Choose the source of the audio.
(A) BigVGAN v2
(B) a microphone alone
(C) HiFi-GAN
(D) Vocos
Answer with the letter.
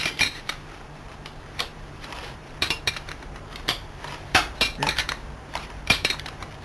A